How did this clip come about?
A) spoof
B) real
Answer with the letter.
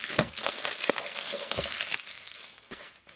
A